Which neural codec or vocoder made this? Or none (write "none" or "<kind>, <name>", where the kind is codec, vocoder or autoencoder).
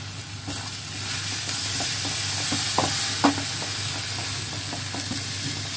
none